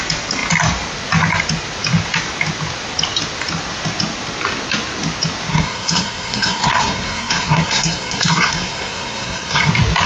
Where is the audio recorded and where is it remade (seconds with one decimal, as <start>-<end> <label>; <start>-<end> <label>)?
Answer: 0.0-5.5 recorded; 5.5-9.7 remade; 9.7-10.1 recorded